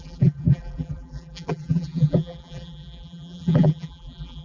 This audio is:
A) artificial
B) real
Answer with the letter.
A